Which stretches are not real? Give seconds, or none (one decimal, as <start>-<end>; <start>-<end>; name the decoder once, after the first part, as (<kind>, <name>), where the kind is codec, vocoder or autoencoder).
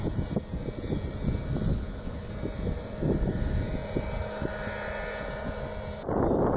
1.7-2.3 (codec, HILCodec)